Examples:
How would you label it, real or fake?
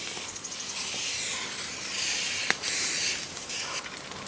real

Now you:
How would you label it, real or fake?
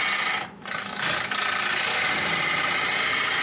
real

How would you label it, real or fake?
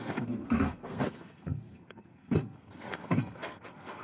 fake